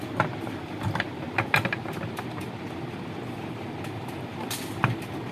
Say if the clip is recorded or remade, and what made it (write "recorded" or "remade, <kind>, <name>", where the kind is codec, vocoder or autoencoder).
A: recorded